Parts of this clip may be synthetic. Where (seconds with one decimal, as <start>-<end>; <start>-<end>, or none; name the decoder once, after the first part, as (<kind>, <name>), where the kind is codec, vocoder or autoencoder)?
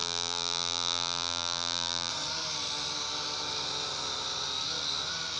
0.0-2.1 (vocoder, BigVGAN v2)